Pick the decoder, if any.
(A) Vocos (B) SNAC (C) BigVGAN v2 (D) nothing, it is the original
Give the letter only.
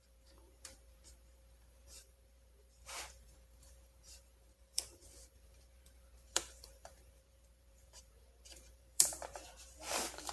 C